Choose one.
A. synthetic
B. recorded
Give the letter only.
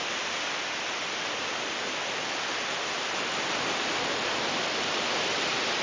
B